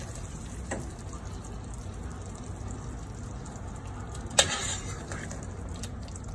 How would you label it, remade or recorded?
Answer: recorded